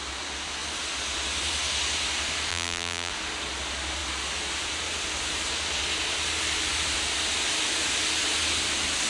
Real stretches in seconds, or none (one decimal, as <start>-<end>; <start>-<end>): 0.0-2.5; 3.1-9.1